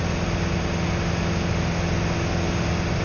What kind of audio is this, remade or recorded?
recorded